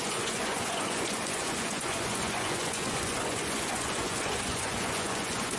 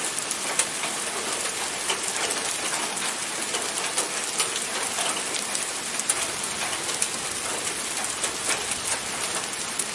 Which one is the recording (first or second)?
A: second